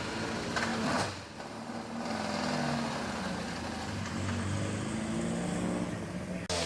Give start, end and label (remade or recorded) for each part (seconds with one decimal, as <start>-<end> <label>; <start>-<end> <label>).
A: 0.0-6.7 recorded